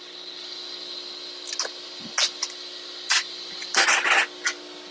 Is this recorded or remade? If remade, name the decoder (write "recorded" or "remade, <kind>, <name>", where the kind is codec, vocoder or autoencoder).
recorded